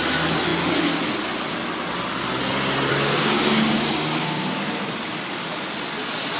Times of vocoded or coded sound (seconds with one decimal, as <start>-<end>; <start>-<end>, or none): 2.9-4.6